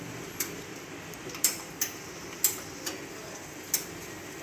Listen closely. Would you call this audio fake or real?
real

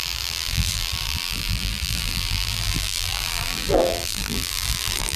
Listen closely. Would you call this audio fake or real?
fake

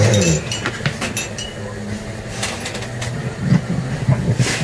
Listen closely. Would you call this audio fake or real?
real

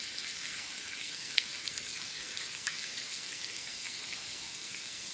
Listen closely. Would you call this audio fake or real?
fake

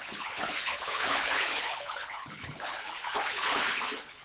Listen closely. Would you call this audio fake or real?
fake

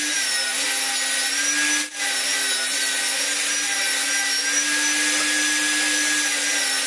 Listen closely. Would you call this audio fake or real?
real